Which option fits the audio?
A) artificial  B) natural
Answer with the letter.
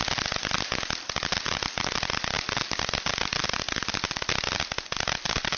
B